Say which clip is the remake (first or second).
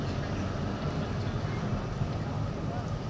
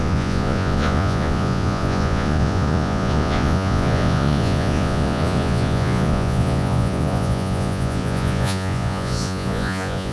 second